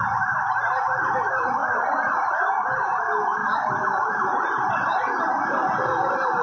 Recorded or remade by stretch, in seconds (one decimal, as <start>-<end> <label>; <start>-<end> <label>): 0.0-6.4 recorded